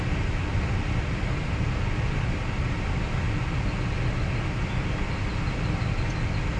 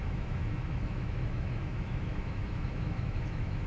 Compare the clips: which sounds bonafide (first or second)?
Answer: first